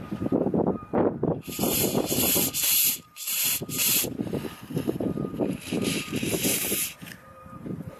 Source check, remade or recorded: remade